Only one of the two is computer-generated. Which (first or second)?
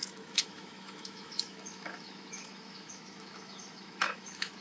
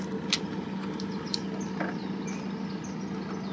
first